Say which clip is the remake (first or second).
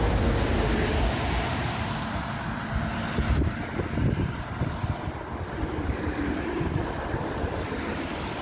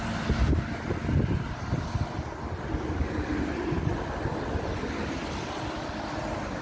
first